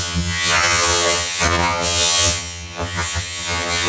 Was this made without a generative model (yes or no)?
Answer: no